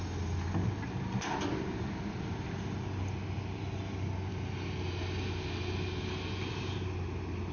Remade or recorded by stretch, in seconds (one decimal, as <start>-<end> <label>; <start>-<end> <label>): 0.0-7.5 recorded